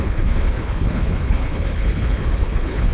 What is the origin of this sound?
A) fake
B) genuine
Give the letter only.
A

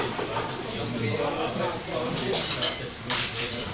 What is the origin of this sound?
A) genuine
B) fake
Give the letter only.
B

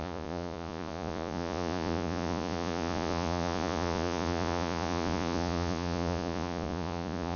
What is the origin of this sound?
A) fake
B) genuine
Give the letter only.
A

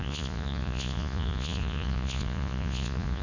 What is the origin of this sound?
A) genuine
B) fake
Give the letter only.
B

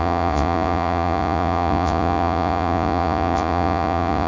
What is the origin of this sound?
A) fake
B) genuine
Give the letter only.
A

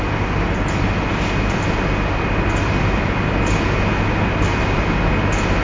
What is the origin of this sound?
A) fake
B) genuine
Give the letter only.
B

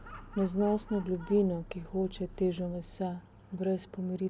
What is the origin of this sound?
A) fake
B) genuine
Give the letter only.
B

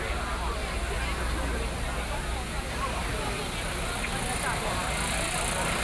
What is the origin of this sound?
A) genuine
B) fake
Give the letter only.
A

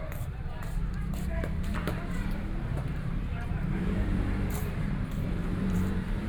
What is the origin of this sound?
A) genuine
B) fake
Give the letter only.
B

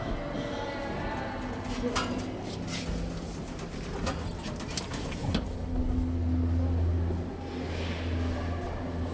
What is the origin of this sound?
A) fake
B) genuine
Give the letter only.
B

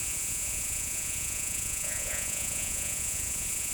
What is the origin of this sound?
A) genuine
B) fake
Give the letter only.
B